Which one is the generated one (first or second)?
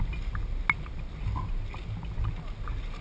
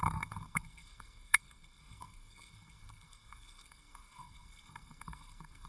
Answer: second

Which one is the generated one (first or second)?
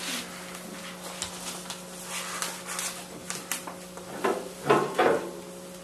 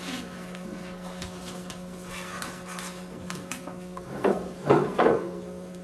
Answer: second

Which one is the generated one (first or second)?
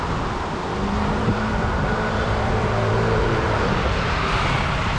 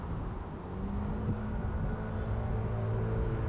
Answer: first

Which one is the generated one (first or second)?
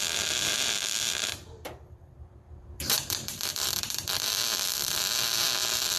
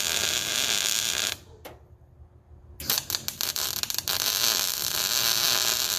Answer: first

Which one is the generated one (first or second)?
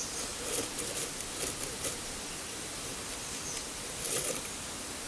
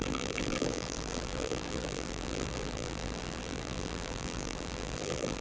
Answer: second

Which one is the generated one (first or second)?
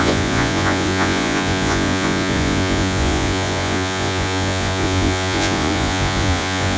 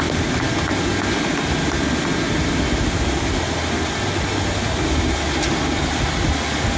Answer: first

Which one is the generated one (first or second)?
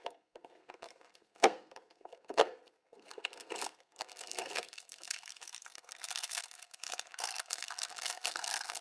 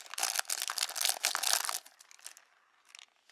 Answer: first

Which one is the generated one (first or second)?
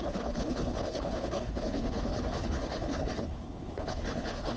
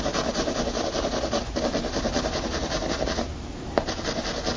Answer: first